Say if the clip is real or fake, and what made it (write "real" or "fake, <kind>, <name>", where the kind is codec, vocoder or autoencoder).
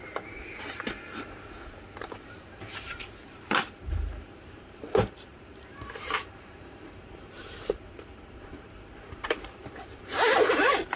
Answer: fake, vocoder, BigVGAN v2